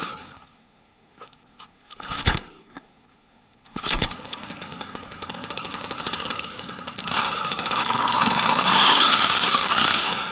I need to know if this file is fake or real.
fake